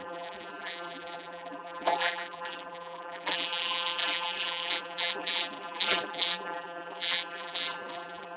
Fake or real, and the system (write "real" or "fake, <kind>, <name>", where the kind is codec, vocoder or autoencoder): fake, vocoder, BigVGAN v2